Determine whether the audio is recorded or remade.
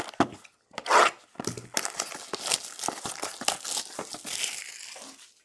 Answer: recorded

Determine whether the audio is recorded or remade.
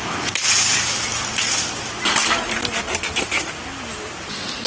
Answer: recorded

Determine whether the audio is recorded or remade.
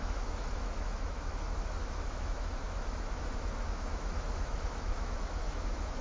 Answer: remade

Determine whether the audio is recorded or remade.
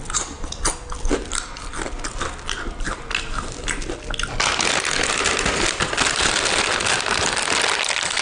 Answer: recorded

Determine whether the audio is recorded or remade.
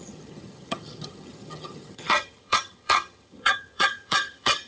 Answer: remade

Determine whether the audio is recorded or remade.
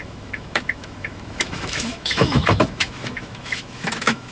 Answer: remade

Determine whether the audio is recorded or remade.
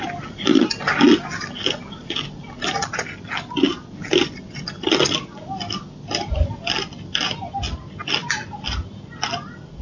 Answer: recorded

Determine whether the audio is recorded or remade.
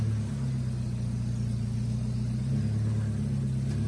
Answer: recorded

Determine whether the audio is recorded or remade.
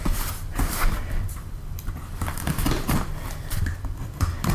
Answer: remade